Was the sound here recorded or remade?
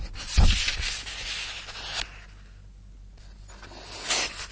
recorded